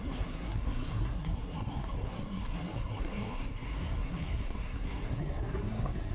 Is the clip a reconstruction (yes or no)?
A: yes